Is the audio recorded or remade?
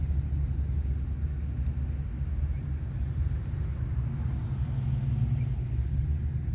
recorded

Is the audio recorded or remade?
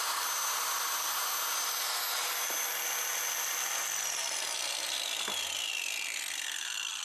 recorded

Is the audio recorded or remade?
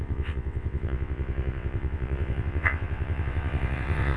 remade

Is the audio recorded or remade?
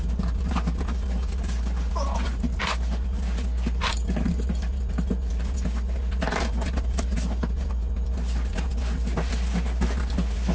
recorded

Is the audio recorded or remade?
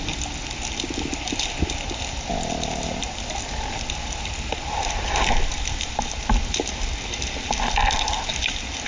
recorded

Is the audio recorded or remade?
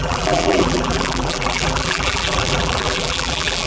remade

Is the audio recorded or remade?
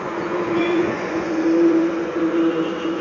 remade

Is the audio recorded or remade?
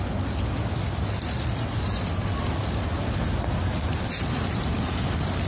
recorded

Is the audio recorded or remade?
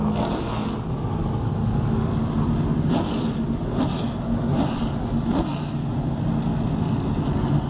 recorded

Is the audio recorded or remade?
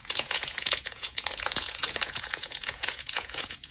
remade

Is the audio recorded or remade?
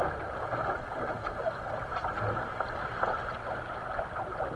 recorded